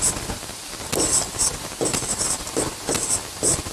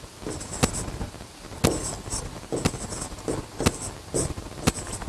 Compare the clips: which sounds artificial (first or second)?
first